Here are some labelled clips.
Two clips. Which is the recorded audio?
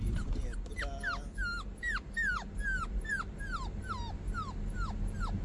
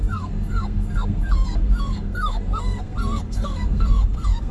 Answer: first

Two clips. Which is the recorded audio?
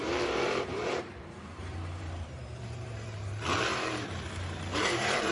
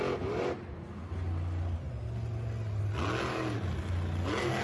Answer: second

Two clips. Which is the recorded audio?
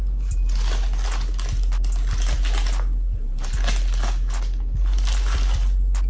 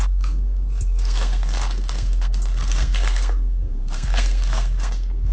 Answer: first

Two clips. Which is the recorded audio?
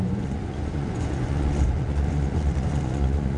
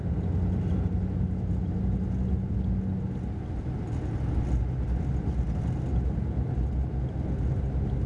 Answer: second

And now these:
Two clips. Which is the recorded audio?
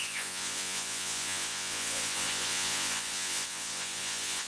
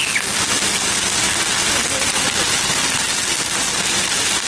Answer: second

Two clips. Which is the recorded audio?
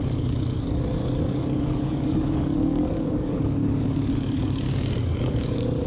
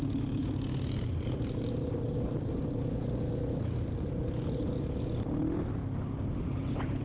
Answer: second